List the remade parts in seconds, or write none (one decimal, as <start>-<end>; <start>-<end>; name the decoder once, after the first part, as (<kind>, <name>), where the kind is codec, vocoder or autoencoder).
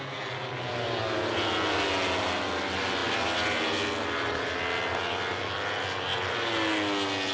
none